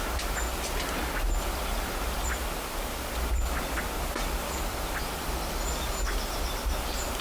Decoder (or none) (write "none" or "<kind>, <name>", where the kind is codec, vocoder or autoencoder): none